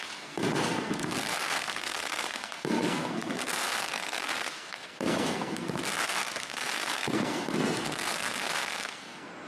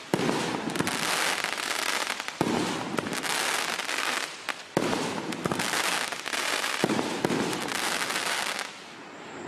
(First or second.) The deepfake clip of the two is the first